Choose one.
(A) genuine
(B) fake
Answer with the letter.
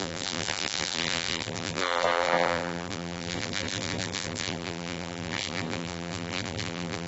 B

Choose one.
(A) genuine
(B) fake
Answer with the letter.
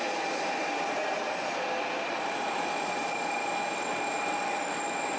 A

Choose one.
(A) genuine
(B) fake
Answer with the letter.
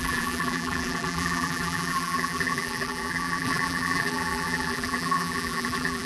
B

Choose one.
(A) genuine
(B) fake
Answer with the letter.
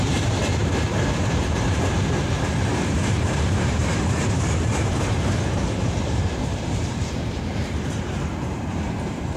B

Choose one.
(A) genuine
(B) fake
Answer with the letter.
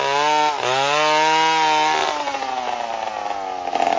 A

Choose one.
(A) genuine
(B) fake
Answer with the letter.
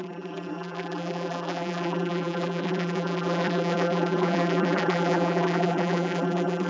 B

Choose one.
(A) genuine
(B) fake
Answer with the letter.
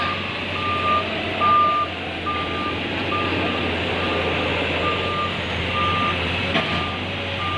A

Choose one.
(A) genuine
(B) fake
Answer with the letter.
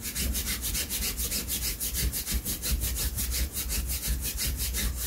A